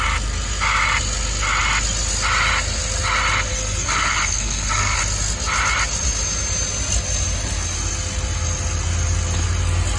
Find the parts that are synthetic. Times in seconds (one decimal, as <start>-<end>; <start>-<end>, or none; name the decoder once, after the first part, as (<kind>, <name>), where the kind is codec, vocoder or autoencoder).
3.5-5.0 (codec, SNAC)

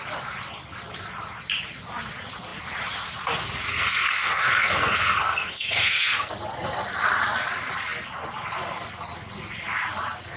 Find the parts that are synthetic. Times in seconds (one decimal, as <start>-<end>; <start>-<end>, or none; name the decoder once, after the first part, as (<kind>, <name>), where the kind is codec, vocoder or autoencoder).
3.7-6.3 (codec, SNAC)

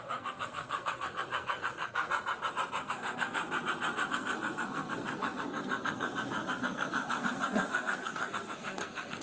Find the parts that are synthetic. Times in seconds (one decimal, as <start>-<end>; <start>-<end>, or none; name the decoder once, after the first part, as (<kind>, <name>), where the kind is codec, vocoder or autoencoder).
0.0-2.1 (codec, SNAC); 2.8-3.4; 4.1-9.2